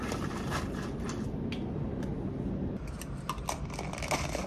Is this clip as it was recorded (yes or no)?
yes